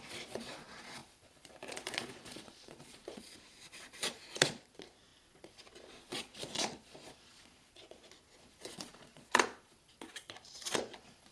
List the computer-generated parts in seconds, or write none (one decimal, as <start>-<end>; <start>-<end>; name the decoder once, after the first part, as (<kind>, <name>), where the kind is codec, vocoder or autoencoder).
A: 0.0-11.3 (vocoder, Vocos)